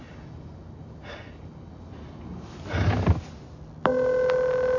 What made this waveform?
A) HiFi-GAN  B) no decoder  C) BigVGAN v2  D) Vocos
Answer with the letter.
B